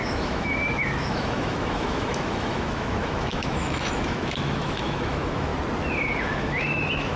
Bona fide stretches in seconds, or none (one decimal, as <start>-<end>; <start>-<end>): 5.5-6.2